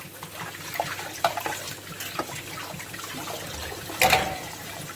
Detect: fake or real real